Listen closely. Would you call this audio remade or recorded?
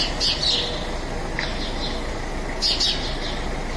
recorded